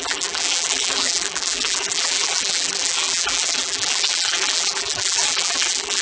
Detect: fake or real fake